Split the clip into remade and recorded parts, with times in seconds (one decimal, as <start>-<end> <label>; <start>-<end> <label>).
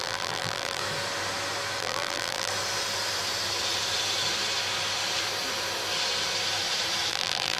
0.0-0.8 remade; 0.8-1.8 recorded; 1.8-2.5 remade; 2.5-7.1 recorded; 7.1-7.6 remade